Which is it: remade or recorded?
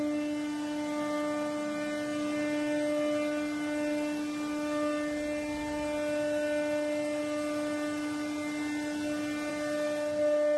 recorded